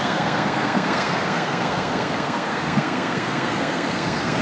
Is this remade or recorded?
remade